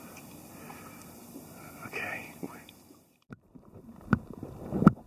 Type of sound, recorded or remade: remade